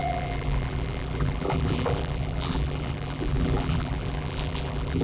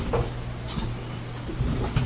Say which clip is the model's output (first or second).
first